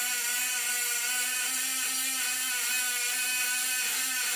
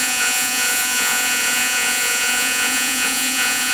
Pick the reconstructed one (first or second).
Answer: second